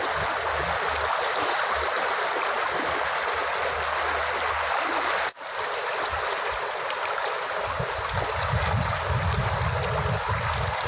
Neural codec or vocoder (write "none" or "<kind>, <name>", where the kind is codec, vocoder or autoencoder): none